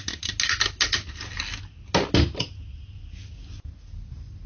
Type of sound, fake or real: real